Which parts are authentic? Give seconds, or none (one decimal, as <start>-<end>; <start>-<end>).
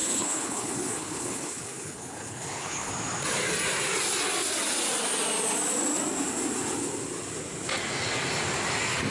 2.9-9.1